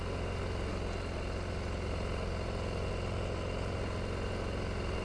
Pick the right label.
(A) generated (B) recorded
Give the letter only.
B